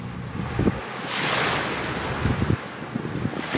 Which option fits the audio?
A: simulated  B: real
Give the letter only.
B